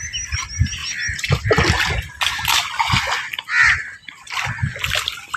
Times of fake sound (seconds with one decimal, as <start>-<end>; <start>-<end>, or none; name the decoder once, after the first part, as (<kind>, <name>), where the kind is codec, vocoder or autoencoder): none